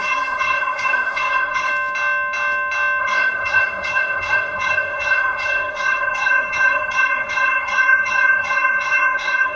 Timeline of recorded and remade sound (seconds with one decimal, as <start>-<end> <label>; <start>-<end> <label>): 0.0-1.7 remade; 1.7-3.0 recorded; 3.0-9.6 remade